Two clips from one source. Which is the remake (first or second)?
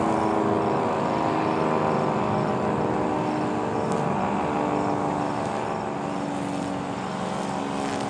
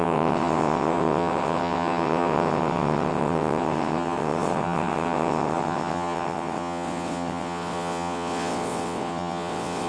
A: second